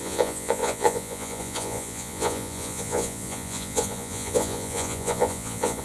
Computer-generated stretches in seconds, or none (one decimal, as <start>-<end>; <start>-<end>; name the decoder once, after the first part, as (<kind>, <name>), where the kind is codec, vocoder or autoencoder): 0.0-5.8 (vocoder, Vocos)